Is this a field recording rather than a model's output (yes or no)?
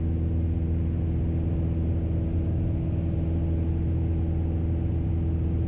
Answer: yes